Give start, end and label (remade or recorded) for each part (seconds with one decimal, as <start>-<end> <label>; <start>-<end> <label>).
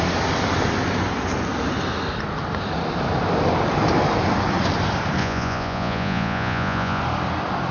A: 0.0-5.2 recorded; 5.2-7.0 remade; 7.0-7.7 recorded